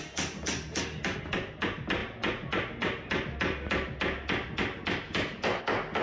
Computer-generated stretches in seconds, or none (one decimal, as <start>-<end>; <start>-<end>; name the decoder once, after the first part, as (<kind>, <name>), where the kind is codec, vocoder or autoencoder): none